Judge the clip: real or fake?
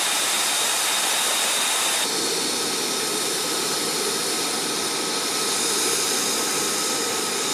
real